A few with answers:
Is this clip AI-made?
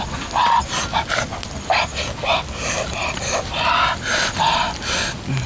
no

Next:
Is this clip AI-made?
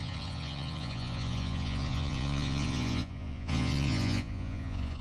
yes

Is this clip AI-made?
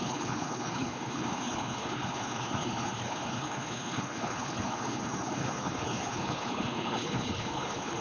yes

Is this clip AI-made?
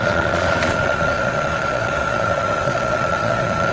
yes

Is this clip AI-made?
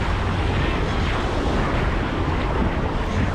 no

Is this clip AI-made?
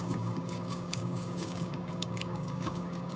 yes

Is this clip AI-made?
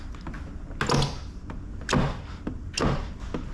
no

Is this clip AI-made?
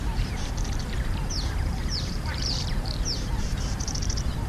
yes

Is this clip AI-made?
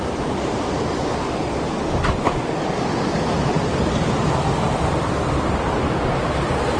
yes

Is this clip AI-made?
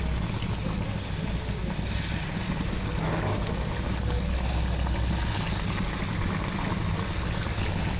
no